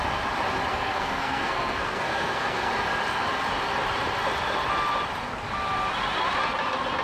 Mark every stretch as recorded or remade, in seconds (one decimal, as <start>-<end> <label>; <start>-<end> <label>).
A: 0.0-0.7 recorded; 0.7-2.7 remade; 2.7-7.0 recorded